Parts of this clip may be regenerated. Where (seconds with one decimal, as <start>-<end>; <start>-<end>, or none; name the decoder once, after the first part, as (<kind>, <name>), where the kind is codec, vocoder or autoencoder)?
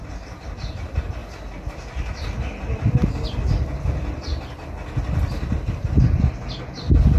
none